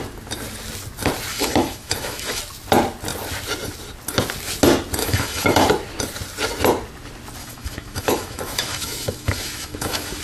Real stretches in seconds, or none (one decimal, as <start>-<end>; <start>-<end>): 0.0-1.3; 2.4-5.0; 5.6-7.4